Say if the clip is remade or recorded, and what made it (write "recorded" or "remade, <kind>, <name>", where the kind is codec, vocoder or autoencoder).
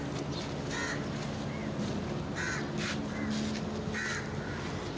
recorded